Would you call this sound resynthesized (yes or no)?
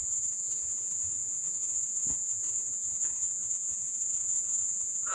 yes